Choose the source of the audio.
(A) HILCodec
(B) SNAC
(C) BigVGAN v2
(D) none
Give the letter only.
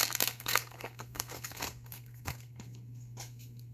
B